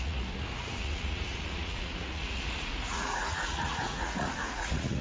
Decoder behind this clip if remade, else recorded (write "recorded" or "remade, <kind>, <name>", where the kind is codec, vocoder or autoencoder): remade, vocoder, Vocos